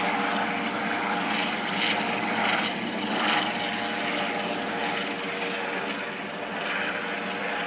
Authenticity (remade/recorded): recorded